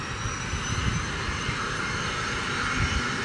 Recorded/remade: recorded